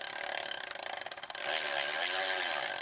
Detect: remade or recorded recorded